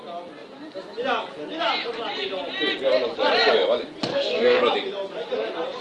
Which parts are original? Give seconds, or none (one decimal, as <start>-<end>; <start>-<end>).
0.0-4.1; 4.6-5.8